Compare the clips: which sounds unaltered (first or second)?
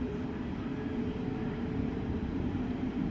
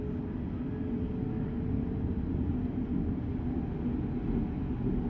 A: second